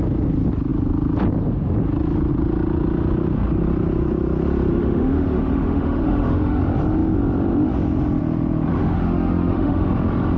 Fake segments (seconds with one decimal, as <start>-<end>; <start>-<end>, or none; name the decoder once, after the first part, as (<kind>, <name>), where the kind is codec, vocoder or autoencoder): 4.7-6.6 (autoencoder, DAC-VAE); 8.7-9.9